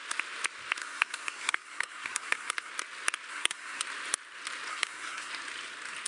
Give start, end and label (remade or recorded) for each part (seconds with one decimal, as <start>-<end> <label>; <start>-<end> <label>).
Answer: 0.0-0.8 recorded; 0.8-2.7 remade; 2.7-3.3 recorded; 3.3-3.8 remade; 3.8-4.7 recorded; 4.7-5.3 remade; 5.3-6.1 recorded